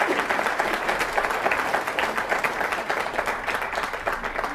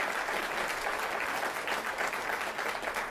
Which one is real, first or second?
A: second